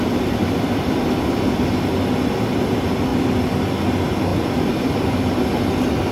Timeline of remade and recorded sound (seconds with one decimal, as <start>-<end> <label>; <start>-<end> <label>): 0.0-0.4 recorded; 0.4-1.7 remade; 1.7-3.1 recorded; 3.1-3.8 remade; 3.8-4.3 recorded; 4.3-4.9 remade; 4.9-6.1 recorded